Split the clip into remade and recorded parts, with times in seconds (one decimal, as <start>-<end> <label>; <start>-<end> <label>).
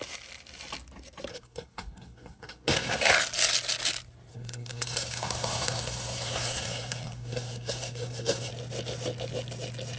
0.0-1.3 recorded; 1.3-3.1 remade; 3.1-4.3 recorded; 4.3-8.5 remade; 8.5-10.0 recorded